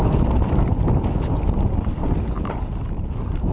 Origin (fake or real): real